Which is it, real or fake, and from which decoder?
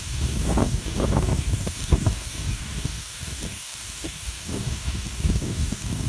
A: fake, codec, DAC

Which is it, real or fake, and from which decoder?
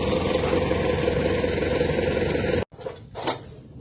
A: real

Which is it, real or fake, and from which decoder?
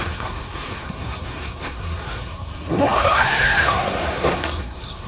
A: fake, codec, SNAC